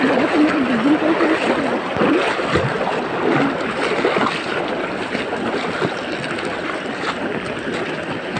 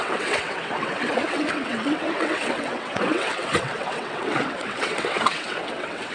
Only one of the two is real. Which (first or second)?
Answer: first